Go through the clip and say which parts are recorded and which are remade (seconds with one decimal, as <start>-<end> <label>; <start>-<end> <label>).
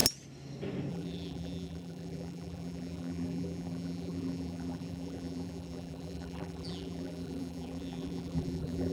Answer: 0.0-0.9 recorded; 0.9-8.9 remade